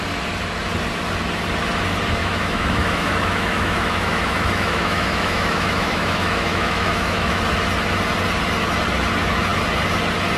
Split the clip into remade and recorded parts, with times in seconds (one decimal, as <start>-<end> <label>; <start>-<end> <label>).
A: 0.0-2.2 recorded; 2.2-7.4 remade; 7.4-10.4 recorded